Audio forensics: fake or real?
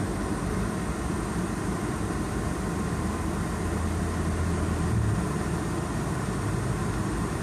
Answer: real